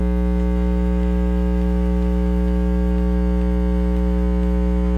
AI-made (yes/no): yes